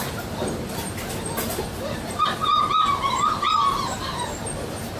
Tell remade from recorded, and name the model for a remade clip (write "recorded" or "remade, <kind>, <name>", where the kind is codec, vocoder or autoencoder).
recorded